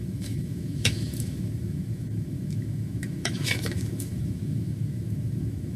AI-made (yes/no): yes